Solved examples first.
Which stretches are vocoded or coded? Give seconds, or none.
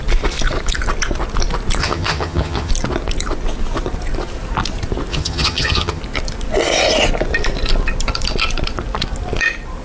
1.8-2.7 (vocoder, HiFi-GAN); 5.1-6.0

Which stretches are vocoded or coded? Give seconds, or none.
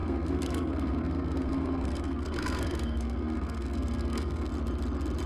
0.0-4.5 (codec, SNAC)